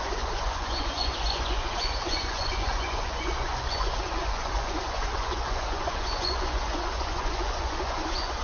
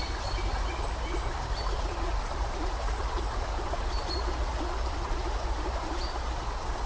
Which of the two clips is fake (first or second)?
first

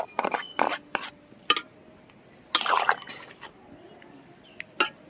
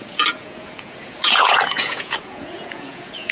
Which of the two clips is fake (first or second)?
second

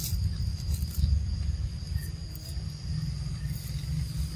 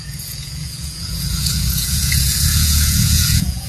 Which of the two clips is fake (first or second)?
second